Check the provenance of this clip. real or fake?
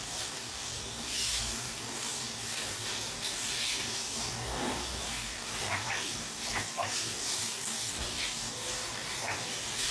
fake